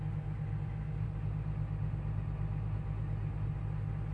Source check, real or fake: real